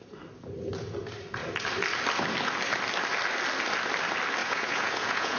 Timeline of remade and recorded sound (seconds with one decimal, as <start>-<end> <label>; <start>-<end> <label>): 0.0-4.4 recorded; 4.4-5.4 remade